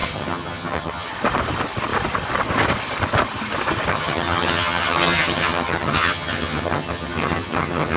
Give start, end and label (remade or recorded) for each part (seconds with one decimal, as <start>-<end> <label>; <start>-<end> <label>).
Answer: 0.0-1.1 remade; 1.1-3.9 recorded; 3.9-8.0 remade